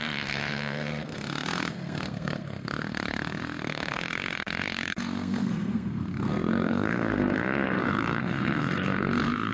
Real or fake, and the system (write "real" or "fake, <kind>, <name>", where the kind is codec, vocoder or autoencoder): fake, codec, SNAC